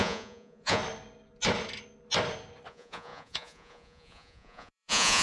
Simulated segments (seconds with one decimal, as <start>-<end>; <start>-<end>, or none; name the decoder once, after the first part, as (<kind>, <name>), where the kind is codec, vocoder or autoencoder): 0.0-0.8 (vocoder, Vocos); 2.7-5.2